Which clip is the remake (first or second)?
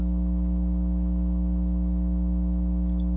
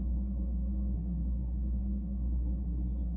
second